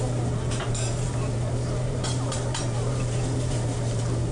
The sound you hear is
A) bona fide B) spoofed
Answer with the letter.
B